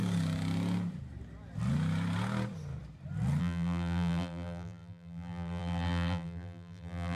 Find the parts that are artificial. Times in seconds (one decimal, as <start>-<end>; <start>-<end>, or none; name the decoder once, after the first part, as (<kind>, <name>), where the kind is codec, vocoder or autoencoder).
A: 3.4-7.2 (vocoder, BigVGAN v2)